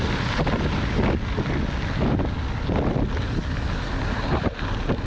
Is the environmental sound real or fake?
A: real